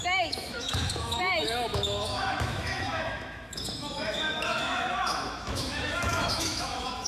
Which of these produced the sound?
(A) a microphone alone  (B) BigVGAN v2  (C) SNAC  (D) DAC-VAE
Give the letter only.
D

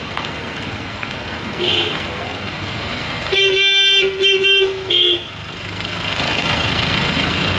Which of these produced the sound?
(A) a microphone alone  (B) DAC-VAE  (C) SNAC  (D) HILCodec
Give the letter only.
C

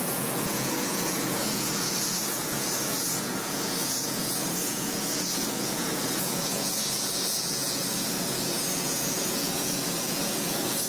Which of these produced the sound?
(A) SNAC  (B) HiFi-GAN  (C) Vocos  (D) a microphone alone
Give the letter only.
C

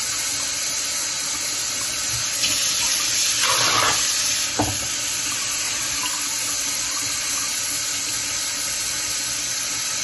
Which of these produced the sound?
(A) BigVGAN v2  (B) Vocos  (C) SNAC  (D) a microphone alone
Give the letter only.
D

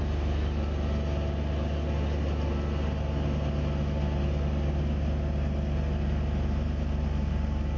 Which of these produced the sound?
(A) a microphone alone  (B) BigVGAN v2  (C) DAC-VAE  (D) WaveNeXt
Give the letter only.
A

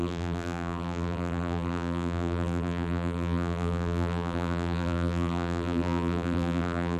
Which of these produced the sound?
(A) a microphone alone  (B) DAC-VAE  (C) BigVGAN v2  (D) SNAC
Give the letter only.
C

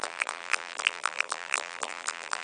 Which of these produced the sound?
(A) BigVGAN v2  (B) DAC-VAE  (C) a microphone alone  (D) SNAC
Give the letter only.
A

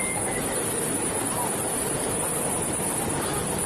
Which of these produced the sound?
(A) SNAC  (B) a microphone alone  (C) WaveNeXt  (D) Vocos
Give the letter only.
B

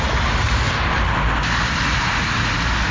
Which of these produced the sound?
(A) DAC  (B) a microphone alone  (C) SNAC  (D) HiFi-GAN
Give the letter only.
B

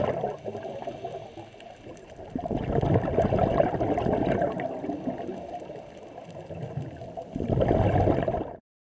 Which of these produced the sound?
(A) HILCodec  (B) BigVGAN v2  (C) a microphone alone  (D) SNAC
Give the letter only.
C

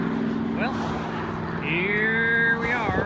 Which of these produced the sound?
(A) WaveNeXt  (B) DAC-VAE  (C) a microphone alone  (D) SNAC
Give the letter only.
C